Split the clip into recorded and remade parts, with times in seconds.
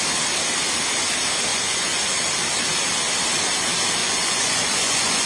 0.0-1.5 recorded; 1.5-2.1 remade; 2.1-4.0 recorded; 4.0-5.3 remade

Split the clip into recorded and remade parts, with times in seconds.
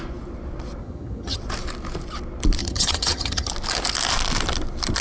0.0-0.8 recorded; 0.8-1.4 remade; 1.4-2.6 recorded; 2.6-3.5 remade; 3.5-5.0 recorded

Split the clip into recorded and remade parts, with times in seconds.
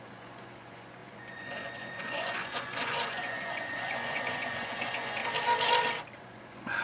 0.0-5.2 remade; 5.2-6.2 recorded; 6.2-6.8 remade